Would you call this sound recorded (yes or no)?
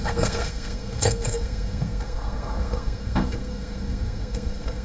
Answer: no